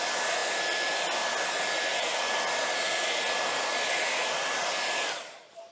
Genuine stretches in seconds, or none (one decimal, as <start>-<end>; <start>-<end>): 0.0-5.7